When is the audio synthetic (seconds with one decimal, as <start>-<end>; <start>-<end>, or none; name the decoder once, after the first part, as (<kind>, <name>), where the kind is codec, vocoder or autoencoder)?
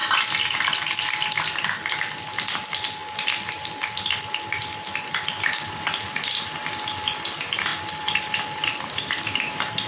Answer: 7.7-9.9 (vocoder, BigVGAN v2)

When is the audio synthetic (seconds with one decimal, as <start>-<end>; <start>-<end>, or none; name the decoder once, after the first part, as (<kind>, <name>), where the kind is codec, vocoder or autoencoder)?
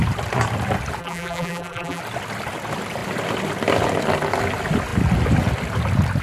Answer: 1.0-2.0 (vocoder, BigVGAN v2)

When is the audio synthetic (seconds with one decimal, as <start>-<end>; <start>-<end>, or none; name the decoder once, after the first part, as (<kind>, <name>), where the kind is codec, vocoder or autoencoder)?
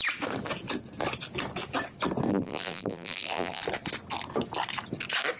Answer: 2.3-3.6 (vocoder, BigVGAN v2)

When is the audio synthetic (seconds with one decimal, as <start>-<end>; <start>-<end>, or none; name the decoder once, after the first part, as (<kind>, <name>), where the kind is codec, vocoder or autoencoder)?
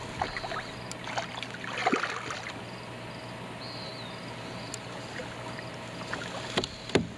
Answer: none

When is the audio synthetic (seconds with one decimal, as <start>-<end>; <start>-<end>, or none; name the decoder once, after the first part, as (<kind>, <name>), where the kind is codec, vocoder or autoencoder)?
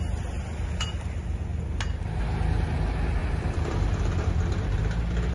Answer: 3.2-5.3 (vocoder, BigVGAN v2)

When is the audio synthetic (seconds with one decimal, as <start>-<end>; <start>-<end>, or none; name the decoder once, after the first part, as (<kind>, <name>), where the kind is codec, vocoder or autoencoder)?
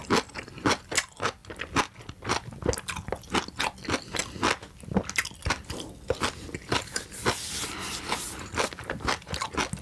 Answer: none